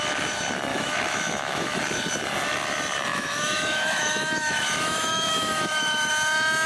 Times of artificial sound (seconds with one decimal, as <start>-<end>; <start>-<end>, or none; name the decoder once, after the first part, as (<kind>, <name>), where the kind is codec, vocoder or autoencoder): 0.7-1.8 (autoencoder, DAC-VAE); 3.1-6.1

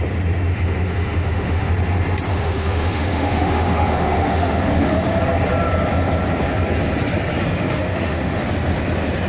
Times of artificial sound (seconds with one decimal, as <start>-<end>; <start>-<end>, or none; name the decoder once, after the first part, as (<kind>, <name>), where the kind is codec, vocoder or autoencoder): 0.5-1.7 (autoencoder, DAC-VAE); 2.3-5.2; 7.5-8.4

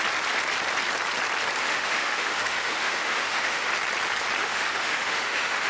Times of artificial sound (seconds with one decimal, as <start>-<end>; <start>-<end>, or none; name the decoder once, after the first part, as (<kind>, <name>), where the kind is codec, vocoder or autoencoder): 1.6-3.7 (autoencoder, DAC-VAE); 4.4-5.7

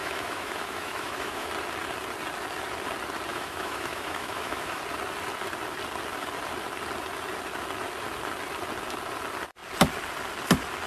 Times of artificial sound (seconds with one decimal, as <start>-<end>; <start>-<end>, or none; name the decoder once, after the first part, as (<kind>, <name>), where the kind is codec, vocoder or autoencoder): 0.0-1.5 (autoencoder, DAC-VAE); 3.3-4.8

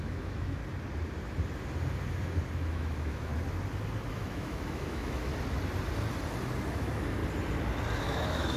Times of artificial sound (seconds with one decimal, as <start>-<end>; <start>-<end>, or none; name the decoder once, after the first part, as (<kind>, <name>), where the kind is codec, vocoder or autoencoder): 0.0-0.6 (autoencoder, DAC-VAE); 2.7-3.3; 4.1-5.3; 6.7-7.2; 8.0-8.6

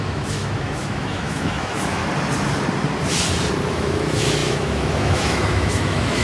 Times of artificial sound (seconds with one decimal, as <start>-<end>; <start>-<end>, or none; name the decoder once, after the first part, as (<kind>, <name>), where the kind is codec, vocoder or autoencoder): 0.0-2.0 (autoencoder, DAC-VAE); 3.7-6.2

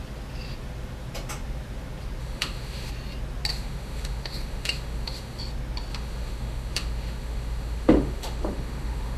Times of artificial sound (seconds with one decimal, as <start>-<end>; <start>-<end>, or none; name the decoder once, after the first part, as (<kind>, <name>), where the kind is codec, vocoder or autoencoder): 2.2-2.9 (autoencoder, DAC-VAE); 3.5-5.4; 5.9-9.2